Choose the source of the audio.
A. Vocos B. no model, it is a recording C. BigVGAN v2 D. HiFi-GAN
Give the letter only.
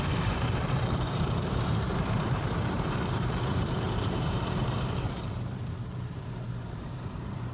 C